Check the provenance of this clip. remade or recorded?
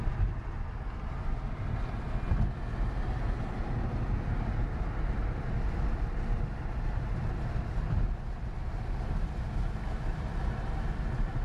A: recorded